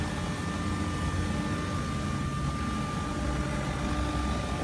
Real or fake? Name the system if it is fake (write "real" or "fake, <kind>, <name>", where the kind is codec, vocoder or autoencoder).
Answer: real